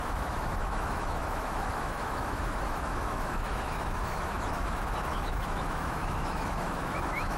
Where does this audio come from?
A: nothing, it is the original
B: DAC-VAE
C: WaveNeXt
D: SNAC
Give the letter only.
B